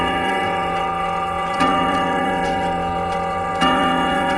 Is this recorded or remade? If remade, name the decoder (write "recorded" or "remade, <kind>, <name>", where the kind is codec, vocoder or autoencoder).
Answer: remade, vocoder, WaveNeXt